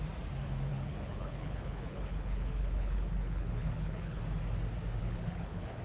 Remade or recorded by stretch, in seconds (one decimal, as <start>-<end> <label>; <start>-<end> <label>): 0.0-0.7 recorded; 0.7-4.2 remade; 4.2-5.0 recorded; 5.0-5.8 remade